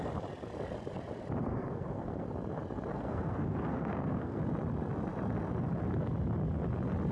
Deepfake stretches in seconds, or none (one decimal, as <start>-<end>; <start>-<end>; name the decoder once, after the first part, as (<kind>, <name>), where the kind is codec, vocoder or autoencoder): 1.4-2.3 (codec, SNAC); 2.9-4.4